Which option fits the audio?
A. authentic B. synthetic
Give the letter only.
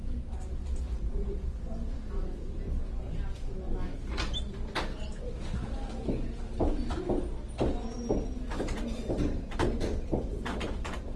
A